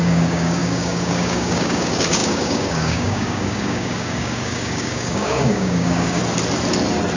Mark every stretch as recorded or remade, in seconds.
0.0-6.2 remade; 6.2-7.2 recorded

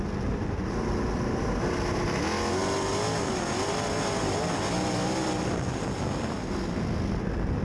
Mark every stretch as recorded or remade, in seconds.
0.0-7.6 recorded

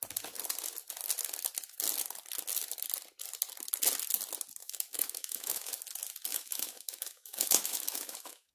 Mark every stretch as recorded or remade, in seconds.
0.0-4.6 recorded; 4.6-5.7 remade; 5.7-6.3 recorded; 6.3-8.5 remade

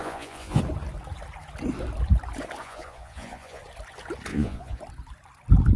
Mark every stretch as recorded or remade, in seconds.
0.0-0.6 remade; 0.6-2.6 recorded; 2.6-3.6 remade; 3.6-4.3 recorded; 4.3-4.8 remade; 4.8-5.8 recorded

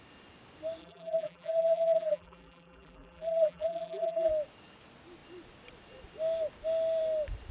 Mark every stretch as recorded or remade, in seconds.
0.0-0.8 recorded; 0.8-4.3 remade; 4.3-7.5 recorded

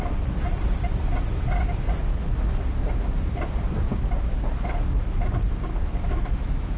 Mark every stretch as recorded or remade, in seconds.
0.0-2.1 recorded; 2.1-2.8 remade; 2.8-5.7 recorded; 5.7-6.8 remade